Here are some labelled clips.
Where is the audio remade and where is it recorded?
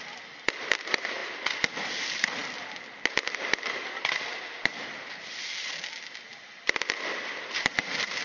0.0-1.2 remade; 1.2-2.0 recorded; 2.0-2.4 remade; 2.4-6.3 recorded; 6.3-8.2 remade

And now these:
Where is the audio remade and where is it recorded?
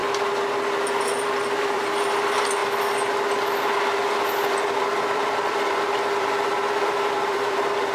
0.0-1.0 recorded; 1.0-2.6 remade; 2.6-4.5 recorded; 4.5-7.9 remade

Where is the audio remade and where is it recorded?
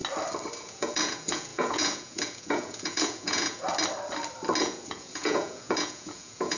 0.0-0.6 recorded; 0.6-3.6 remade; 3.6-4.6 recorded; 4.6-6.6 remade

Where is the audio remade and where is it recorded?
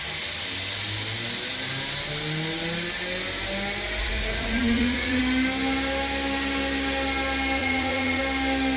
0.0-4.0 recorded; 4.0-5.2 remade; 5.2-7.6 recorded; 7.6-8.2 remade; 8.2-8.8 recorded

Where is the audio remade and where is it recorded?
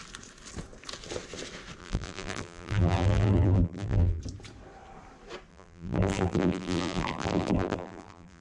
0.0-1.8 recorded; 1.8-4.2 remade; 4.2-5.5 recorded; 5.5-8.4 remade